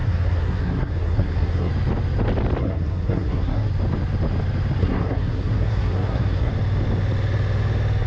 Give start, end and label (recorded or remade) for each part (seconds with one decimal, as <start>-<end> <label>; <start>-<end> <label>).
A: 0.0-1.7 remade; 1.7-2.6 recorded; 2.6-3.7 remade; 3.7-4.8 recorded; 4.8-6.5 remade; 6.5-8.1 recorded